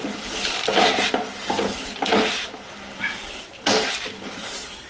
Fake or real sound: real